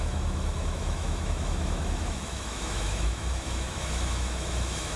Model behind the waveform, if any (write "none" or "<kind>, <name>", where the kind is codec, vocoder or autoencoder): autoencoder, DAC-VAE